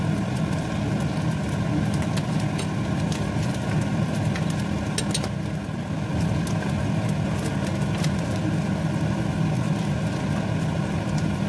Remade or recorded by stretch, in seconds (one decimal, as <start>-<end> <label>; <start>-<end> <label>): 0.0-11.5 recorded